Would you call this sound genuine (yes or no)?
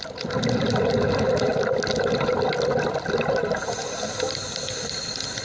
yes